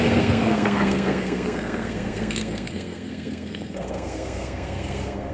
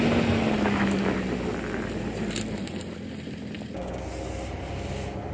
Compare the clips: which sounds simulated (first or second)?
first